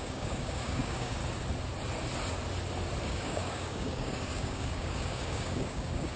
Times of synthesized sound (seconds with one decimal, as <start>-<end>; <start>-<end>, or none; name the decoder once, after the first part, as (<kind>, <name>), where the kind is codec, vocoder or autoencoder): 0.0-1.2 (codec, DAC); 3.0-6.2